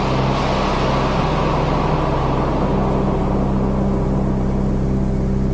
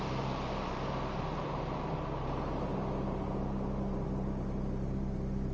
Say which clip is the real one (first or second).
first